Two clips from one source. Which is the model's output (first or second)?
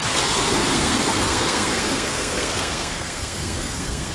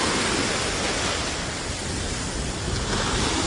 first